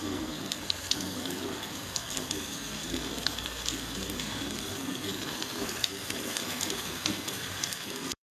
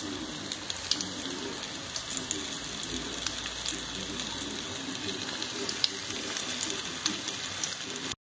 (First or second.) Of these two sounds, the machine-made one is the first